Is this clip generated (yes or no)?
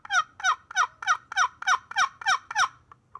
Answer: no